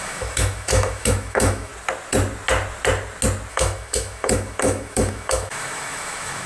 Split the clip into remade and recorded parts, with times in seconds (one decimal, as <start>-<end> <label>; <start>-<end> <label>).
0.0-1.7 remade; 1.7-3.5 recorded; 3.5-6.5 remade